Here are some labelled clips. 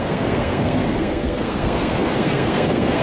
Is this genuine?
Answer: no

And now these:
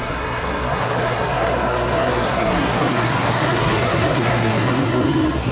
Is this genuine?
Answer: no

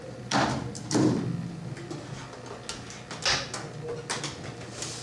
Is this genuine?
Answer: yes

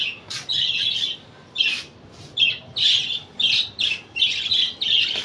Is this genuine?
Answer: yes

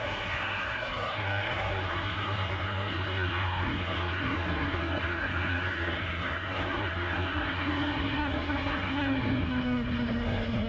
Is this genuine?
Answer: no